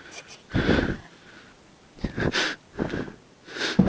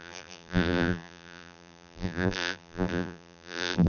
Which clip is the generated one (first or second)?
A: second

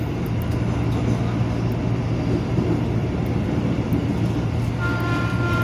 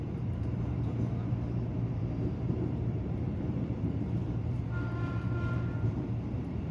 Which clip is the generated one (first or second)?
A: second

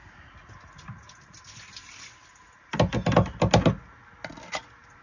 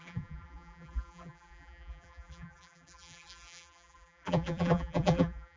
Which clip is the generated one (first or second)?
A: second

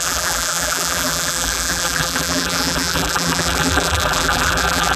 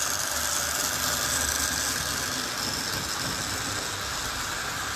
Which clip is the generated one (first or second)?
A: first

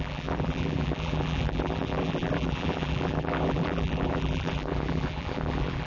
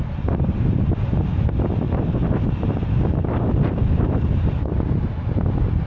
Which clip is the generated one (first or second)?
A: first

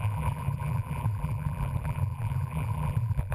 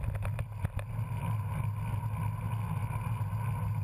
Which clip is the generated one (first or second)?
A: first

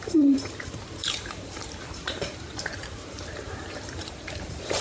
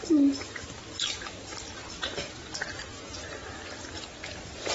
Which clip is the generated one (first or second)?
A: first